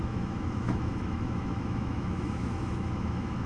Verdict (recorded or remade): remade